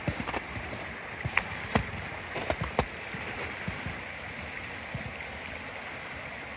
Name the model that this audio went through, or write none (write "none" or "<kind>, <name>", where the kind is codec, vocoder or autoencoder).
none